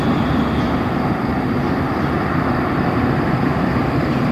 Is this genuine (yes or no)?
yes